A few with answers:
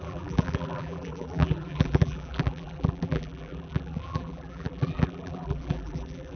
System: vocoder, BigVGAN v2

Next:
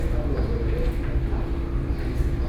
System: none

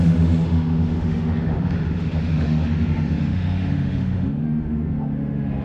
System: autoencoder, DAC-VAE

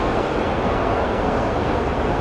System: codec, SNAC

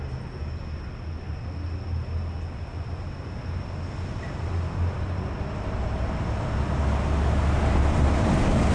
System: none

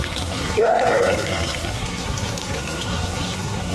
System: codec, SNAC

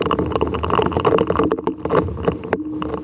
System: none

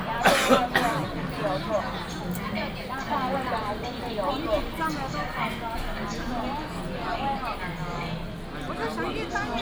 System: none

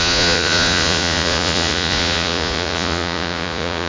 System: vocoder, Vocos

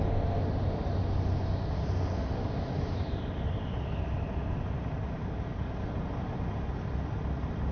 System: none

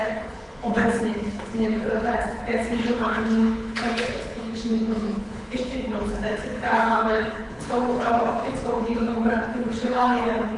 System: codec, HILCodec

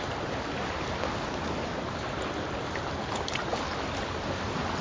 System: none